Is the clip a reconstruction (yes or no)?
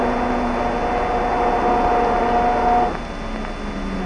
no